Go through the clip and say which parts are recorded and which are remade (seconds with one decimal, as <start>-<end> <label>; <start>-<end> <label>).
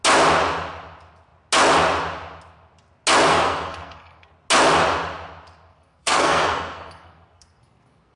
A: 0.0-3.3 recorded; 3.3-4.3 remade; 4.3-5.7 recorded; 5.7-8.2 remade